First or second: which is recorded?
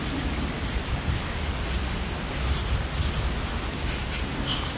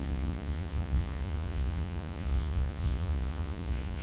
first